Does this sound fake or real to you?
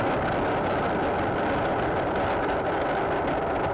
real